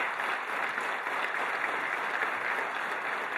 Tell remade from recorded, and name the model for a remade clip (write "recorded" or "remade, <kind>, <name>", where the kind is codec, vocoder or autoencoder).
recorded